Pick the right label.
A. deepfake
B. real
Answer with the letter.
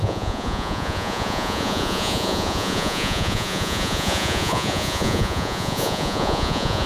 A